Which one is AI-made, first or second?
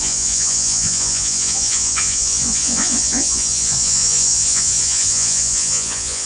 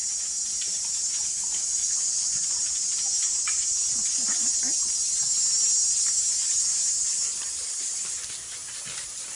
first